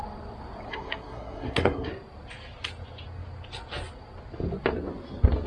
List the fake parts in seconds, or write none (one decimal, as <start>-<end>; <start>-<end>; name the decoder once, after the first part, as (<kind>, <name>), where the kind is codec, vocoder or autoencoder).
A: 0.7-1.9 (codec, SNAC)